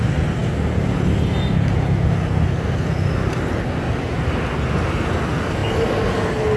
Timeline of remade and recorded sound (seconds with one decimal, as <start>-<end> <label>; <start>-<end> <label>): 0.0-6.6 recorded